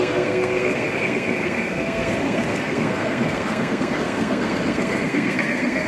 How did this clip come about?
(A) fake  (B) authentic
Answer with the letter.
A